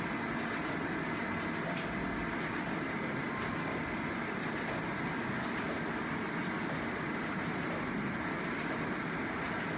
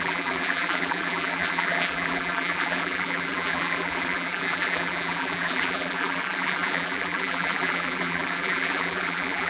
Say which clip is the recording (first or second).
first